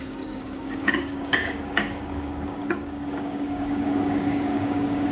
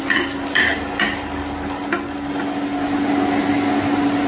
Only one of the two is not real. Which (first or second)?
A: first